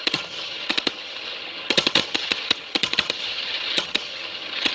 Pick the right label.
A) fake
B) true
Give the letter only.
A